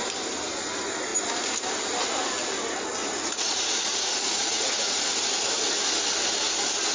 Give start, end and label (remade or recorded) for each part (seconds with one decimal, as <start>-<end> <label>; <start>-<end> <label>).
0.0-3.0 recorded; 3.0-5.0 remade; 5.0-6.9 recorded

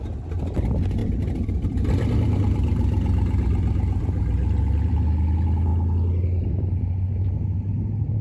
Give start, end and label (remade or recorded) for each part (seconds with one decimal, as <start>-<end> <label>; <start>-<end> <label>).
0.0-1.0 recorded; 1.0-4.9 remade; 4.9-8.2 recorded

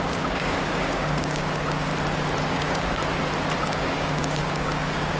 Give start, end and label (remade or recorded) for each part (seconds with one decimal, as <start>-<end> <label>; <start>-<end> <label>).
0.0-1.9 remade; 1.9-2.4 recorded; 2.4-3.0 remade; 3.0-3.6 recorded; 3.6-5.2 remade

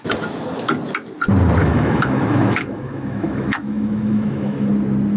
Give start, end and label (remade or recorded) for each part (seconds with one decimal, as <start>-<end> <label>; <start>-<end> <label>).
0.0-1.6 recorded; 1.6-4.7 remade; 4.7-5.2 recorded

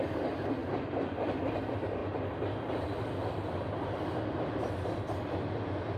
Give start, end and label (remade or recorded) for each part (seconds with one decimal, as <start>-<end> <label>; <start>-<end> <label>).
0.0-0.6 recorded; 0.6-1.5 remade; 1.5-2.0 recorded; 2.0-5.6 remade; 5.6-6.0 recorded